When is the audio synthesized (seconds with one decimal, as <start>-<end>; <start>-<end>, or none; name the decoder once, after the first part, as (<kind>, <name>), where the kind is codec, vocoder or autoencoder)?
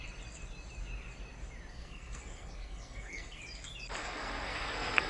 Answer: 1.7-3.4 (codec, SNAC); 4.0-5.1